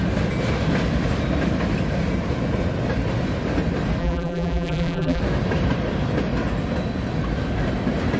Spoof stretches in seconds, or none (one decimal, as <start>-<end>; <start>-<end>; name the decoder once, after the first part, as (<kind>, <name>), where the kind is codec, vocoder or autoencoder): 4.0-5.2 (vocoder, BigVGAN v2)